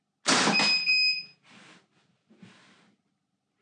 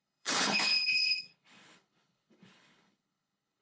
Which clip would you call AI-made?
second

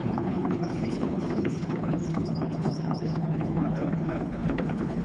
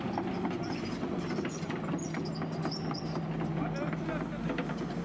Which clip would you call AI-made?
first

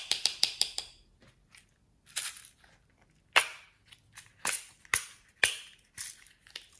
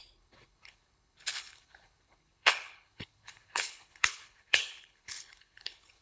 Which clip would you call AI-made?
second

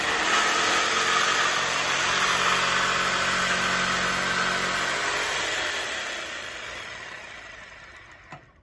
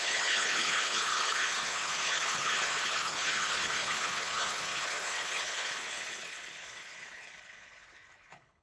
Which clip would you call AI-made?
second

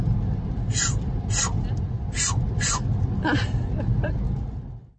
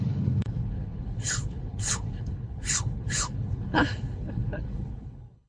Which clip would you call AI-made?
second